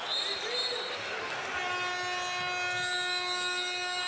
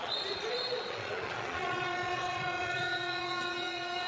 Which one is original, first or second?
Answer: first